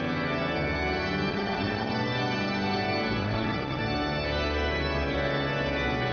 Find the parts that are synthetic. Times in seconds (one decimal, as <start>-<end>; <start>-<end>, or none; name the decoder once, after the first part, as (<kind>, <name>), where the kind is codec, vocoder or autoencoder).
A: 1.3-1.9 (vocoder, WaveNeXt); 3.2-3.8